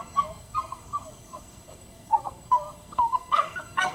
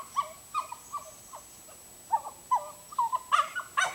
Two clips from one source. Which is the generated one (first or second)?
first